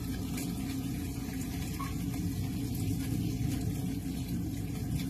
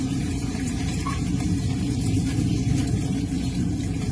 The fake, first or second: second